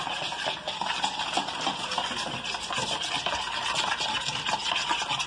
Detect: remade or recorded recorded